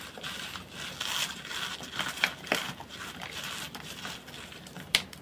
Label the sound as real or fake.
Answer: real